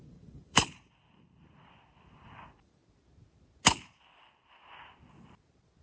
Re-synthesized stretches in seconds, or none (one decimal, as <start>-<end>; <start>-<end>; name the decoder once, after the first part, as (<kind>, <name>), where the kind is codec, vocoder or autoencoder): 0.0-2.8 (vocoder, BigVGAN v2)